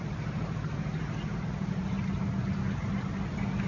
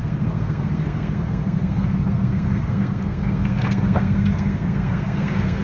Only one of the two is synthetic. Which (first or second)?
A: second